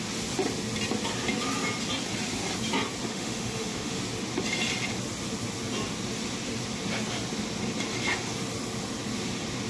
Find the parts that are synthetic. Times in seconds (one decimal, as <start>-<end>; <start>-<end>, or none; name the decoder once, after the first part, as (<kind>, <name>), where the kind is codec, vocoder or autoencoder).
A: 3.1-4.0 (autoencoder, DAC-VAE)